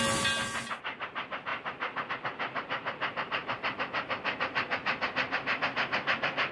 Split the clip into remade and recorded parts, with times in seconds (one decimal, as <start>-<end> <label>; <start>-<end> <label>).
0.0-3.4 recorded; 3.4-5.6 remade; 5.6-6.5 recorded